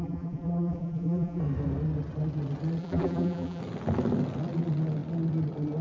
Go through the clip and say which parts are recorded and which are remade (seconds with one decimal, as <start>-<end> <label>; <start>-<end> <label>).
0.0-1.4 remade; 1.4-2.8 recorded; 2.8-3.6 remade; 3.6-5.8 recorded